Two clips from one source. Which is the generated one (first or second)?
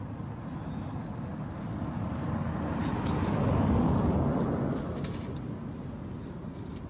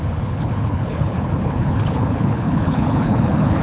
second